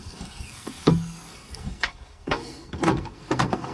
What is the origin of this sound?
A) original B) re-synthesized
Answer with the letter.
B